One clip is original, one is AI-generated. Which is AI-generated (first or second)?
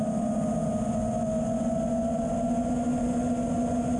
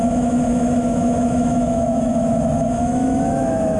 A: second